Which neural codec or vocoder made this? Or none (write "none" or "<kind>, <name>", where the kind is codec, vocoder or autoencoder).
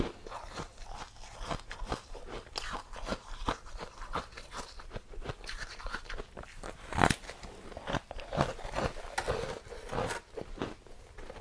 none